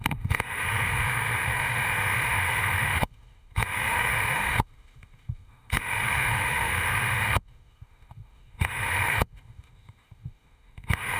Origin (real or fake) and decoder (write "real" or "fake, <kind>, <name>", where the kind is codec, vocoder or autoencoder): fake, autoencoder, DAC-VAE